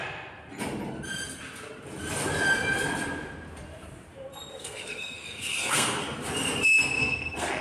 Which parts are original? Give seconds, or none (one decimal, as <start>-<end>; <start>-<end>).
0.0-4.6; 6.0-7.0